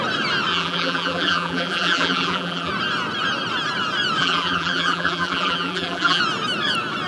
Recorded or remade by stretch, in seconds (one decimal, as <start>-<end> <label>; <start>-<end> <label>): 0.0-0.5 recorded; 0.5-2.7 remade; 2.7-4.2 recorded; 4.2-6.2 remade; 6.2-7.1 recorded